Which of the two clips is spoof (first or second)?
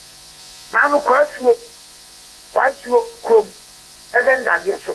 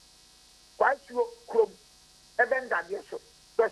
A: first